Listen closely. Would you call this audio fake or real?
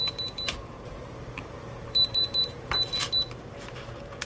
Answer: fake